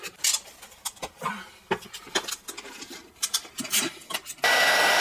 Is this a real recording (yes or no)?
yes